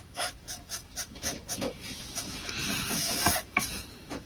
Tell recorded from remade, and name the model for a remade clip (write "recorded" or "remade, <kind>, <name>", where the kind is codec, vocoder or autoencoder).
remade, autoencoder, DAC-VAE